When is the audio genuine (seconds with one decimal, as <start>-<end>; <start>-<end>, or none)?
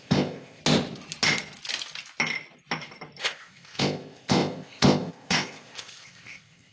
0.6-3.2